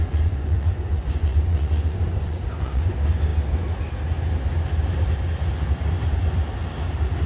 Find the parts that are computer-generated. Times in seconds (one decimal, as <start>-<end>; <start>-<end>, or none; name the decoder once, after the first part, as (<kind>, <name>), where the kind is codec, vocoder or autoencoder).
0.0-2.9 (vocoder, Vocos)